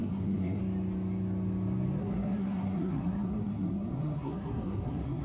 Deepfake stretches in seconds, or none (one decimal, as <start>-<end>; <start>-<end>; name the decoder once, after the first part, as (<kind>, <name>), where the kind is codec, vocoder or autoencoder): 0.0-0.6 (codec, SNAC); 2.0-5.2